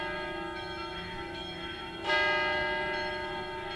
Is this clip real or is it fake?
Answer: real